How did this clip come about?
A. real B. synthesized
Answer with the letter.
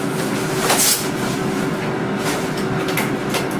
A